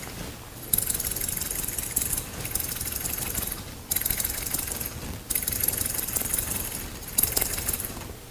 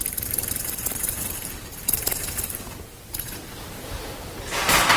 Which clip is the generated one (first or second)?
second